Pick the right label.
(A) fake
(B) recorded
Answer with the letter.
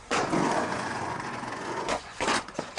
A